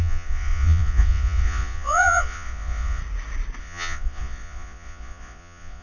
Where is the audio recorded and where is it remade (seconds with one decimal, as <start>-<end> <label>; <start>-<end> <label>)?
0.0-3.0 remade; 3.0-3.6 recorded; 3.6-5.8 remade